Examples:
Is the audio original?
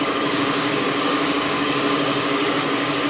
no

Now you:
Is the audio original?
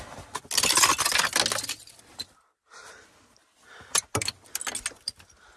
yes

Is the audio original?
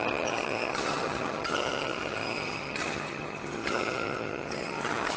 no